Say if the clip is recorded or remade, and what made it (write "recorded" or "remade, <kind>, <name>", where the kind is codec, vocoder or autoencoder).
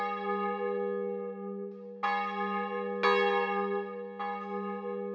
recorded